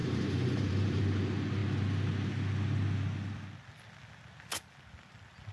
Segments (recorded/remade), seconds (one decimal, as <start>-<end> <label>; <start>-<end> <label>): 0.0-1.0 remade; 1.0-5.5 recorded